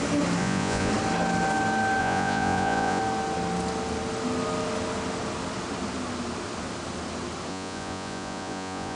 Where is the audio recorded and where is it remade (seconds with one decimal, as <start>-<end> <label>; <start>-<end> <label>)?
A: 0.0-0.4 recorded; 0.4-0.9 remade; 0.9-2.0 recorded; 2.0-3.0 remade; 3.0-7.5 recorded; 7.5-9.0 remade